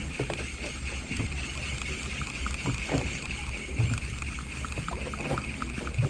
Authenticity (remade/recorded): recorded